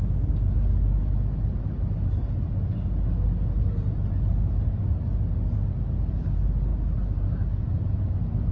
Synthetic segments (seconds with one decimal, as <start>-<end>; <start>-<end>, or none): none